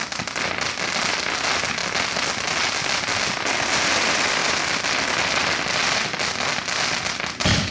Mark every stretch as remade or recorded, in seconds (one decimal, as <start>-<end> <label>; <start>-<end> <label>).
0.0-7.7 recorded